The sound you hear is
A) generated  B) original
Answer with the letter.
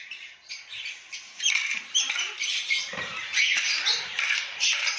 A